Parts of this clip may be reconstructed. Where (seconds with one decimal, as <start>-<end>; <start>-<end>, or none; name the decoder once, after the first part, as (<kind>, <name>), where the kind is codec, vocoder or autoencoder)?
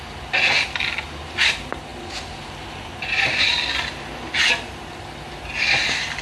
none